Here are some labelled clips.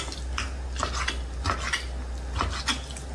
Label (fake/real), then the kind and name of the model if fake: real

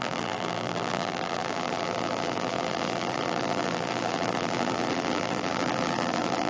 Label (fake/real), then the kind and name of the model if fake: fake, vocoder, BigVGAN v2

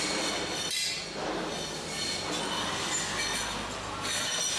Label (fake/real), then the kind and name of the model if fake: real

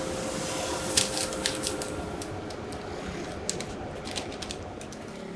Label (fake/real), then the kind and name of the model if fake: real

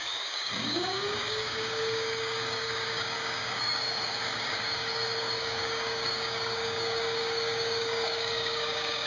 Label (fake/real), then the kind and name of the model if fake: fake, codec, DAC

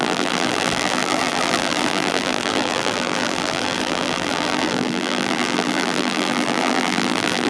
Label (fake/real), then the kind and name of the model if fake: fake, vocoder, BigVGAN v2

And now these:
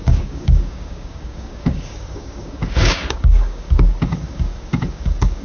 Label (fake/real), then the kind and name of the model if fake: fake, codec, DAC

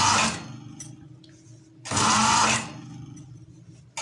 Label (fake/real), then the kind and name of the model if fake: real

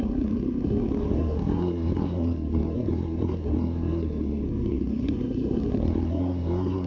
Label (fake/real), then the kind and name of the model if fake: fake, codec, SNAC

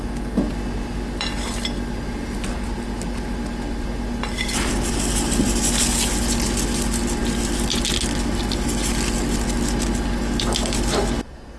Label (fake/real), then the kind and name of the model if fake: real